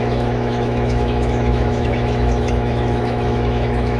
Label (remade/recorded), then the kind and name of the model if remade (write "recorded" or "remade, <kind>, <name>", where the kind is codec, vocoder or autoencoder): remade, autoencoder, DAC-VAE